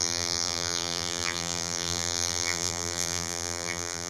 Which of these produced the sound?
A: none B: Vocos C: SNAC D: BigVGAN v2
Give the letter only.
D